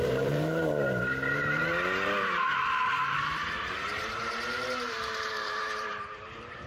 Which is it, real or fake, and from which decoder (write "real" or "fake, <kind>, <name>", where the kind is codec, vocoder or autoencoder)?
fake, vocoder, BigVGAN v2